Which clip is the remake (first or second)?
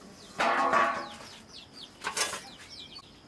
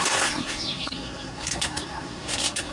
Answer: second